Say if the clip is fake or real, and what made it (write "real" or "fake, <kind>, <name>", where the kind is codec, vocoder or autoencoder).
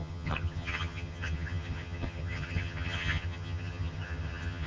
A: fake, vocoder, HiFi-GAN